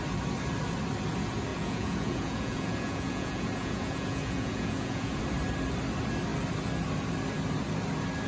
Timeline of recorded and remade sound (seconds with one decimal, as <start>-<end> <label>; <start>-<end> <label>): 0.0-1.5 recorded; 1.5-5.2 remade; 5.2-8.3 recorded